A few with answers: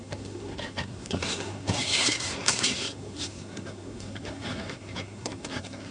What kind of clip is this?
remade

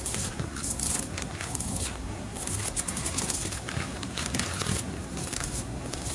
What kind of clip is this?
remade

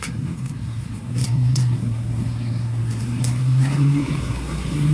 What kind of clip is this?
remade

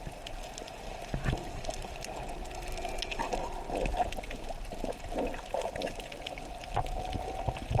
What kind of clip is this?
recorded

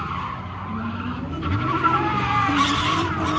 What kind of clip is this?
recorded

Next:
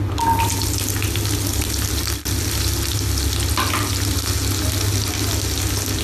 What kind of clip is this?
recorded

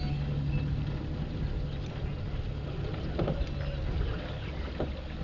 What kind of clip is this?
recorded